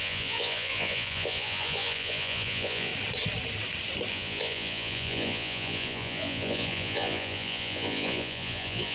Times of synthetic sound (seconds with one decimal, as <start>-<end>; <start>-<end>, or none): 0.0-2.9; 4.1-8.9